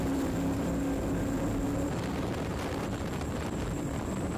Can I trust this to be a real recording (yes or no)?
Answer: yes